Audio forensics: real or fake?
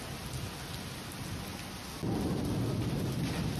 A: real